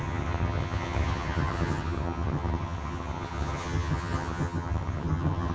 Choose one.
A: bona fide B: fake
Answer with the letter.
B